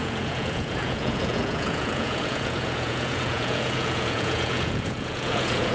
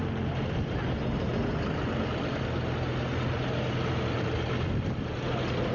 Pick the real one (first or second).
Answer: second